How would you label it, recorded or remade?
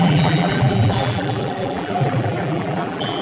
remade